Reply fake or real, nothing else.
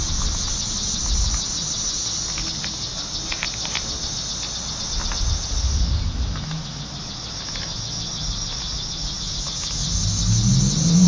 real